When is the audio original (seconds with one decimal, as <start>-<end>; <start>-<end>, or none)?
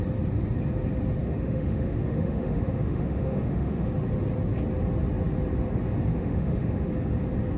0.0-1.2; 3.9-6.1; 6.9-7.6